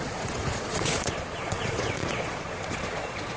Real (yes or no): no